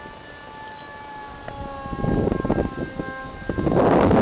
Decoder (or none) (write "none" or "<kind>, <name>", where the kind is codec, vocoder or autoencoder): none